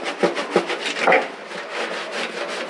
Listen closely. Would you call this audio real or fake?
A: real